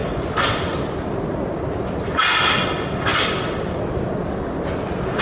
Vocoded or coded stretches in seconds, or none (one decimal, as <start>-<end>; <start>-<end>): none